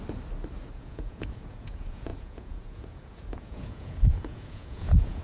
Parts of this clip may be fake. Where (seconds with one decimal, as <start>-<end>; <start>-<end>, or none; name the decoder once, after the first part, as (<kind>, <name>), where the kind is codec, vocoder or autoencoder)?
0.7-5.2 (vocoder, Vocos)